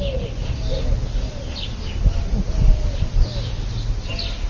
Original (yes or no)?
yes